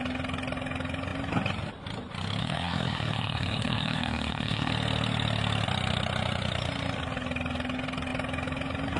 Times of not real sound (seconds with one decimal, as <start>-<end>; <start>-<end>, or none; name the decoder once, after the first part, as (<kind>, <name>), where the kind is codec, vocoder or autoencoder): 2.4-4.7 (codec, SNAC)